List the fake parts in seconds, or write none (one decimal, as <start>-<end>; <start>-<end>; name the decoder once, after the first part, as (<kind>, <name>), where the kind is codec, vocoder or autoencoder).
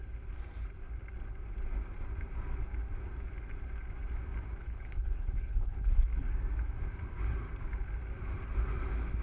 4.6-6.0 (codec, HILCodec)